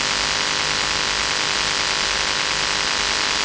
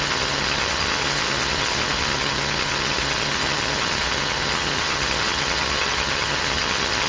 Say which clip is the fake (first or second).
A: second